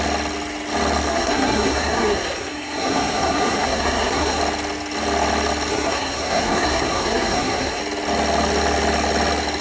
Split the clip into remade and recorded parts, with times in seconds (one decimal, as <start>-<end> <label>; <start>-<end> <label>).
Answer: 0.0-1.1 recorded; 1.1-4.4 remade; 4.4-5.7 recorded; 5.7-7.8 remade; 7.8-9.6 recorded